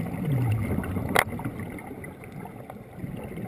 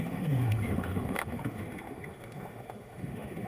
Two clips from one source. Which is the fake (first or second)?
second